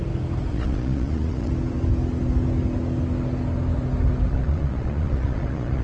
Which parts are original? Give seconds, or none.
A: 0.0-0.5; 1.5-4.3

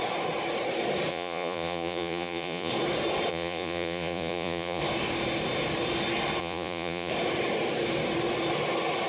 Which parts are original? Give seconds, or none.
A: 0.0-1.1; 2.7-3.3; 4.8-6.4; 7.1-9.1